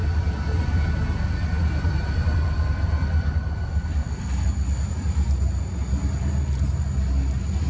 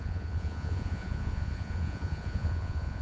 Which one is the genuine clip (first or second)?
first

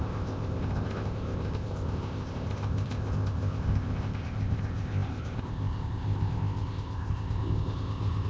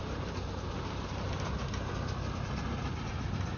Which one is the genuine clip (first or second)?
second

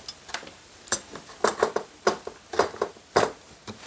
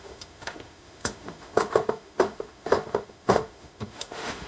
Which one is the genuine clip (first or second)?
first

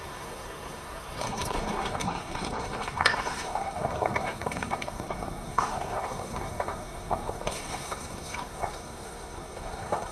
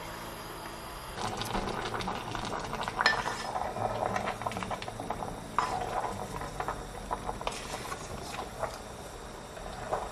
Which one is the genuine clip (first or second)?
second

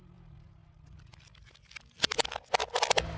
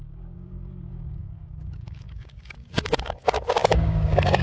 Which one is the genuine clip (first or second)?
first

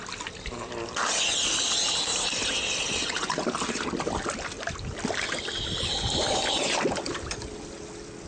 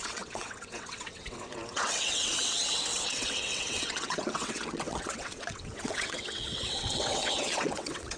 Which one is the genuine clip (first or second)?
first